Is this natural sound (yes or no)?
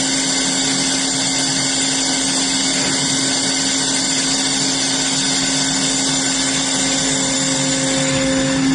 yes